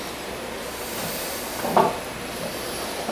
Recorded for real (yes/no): yes